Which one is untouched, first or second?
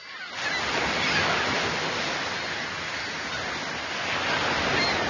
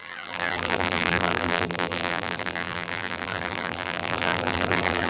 first